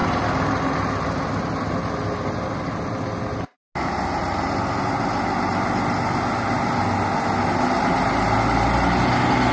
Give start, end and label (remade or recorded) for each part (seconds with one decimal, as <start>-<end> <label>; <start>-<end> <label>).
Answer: 0.0-9.5 recorded